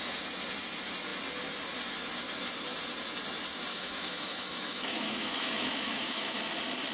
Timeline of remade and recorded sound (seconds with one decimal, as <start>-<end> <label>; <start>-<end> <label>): 0.0-3.7 recorded; 3.7-6.4 remade; 6.4-6.9 recorded